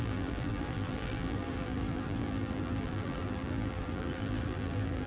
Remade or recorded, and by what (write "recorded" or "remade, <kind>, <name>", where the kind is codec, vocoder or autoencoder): remade, vocoder, BigVGAN v2